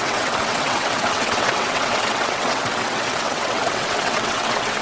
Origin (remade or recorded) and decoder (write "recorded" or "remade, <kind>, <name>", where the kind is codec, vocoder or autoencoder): remade, vocoder, WaveNeXt